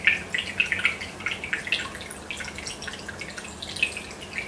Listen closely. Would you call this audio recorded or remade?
recorded